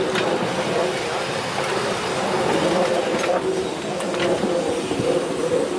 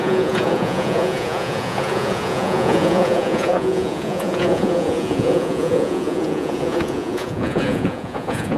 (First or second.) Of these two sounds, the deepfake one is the second